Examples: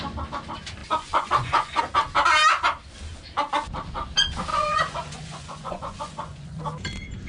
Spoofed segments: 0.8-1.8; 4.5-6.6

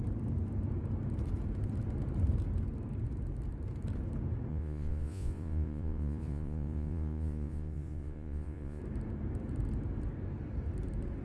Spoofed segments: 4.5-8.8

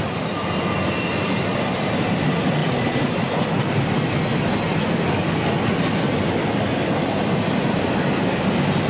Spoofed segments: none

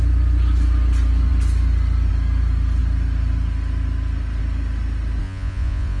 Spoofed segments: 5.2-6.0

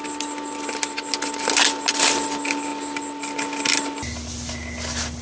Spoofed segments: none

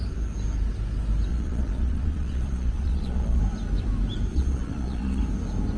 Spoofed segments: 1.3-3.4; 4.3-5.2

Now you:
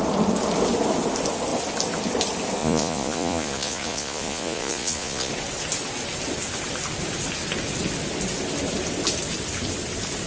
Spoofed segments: 2.6-5.3